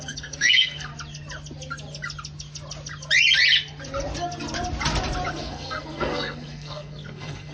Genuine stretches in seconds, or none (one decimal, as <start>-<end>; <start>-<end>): 0.9-5.3